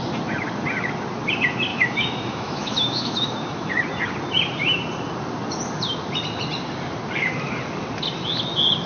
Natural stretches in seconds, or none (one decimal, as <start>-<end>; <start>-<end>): 0.0-1.7; 3.7-8.9